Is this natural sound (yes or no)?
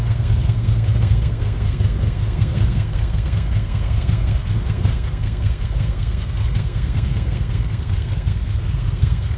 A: no